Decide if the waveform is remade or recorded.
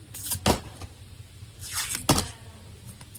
recorded